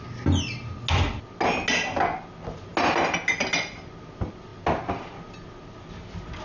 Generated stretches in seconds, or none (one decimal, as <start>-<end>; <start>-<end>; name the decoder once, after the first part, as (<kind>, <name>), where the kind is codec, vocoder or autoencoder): none